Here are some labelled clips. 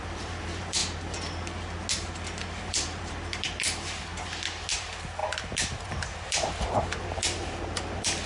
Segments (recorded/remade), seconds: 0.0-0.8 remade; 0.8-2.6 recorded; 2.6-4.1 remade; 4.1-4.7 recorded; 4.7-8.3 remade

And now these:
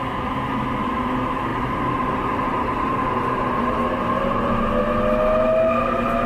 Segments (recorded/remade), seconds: 0.0-1.5 recorded; 1.5-4.5 remade; 4.5-6.3 recorded

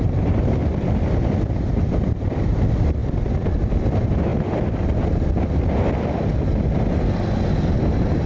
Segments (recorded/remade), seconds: 0.0-0.6 remade; 0.6-1.6 recorded; 1.6-3.0 remade; 3.0-3.9 recorded; 3.9-4.3 remade; 4.3-8.3 recorded